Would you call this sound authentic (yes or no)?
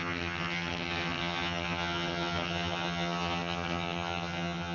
no